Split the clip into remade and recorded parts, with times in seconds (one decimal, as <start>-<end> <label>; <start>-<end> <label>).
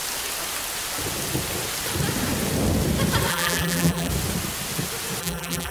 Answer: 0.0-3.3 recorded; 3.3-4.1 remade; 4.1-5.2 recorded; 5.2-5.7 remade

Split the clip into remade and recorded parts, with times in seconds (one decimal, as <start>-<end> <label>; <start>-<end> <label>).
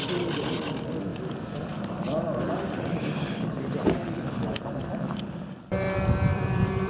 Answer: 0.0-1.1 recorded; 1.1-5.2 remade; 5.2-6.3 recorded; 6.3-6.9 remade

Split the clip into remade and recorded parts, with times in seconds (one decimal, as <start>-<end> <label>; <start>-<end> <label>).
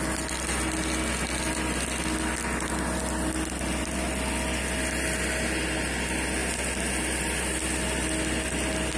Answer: 0.0-9.0 recorded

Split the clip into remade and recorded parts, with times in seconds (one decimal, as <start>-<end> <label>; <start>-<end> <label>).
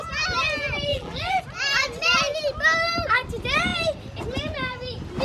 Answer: 0.0-0.9 recorded; 0.9-1.4 remade; 1.4-5.2 recorded